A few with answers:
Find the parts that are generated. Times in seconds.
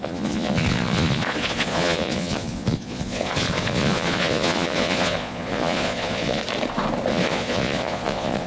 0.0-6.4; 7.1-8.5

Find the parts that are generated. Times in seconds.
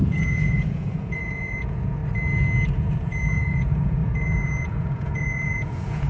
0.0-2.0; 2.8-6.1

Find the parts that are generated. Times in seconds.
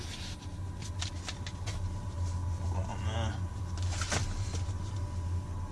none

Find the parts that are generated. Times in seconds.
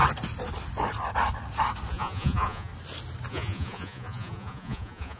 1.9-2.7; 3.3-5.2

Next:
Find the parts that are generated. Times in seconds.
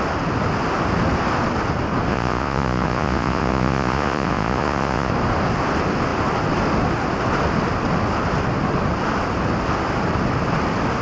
2.1-5.1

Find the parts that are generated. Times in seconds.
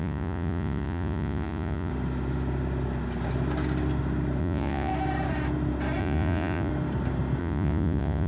0.0-1.9; 4.4-4.9; 6.0-6.7; 7.4-8.3